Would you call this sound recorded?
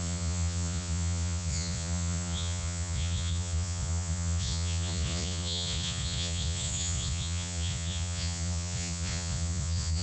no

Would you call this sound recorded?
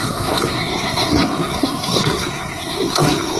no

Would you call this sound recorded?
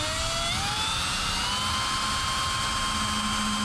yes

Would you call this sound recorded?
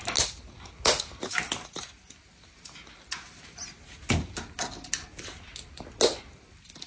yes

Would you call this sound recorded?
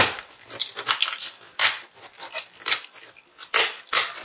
no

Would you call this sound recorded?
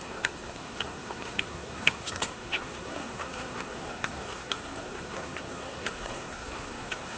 no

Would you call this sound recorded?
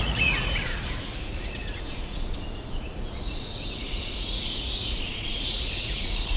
no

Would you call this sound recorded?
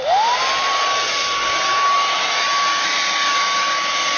yes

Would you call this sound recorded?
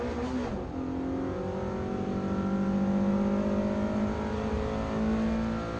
yes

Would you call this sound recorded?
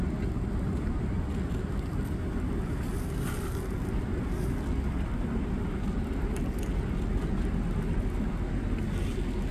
yes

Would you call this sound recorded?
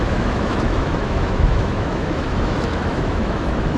no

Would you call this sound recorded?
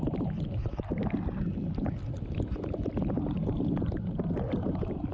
yes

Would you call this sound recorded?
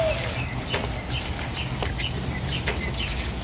yes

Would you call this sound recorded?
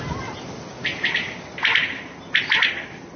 yes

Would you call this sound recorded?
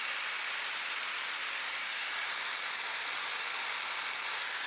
yes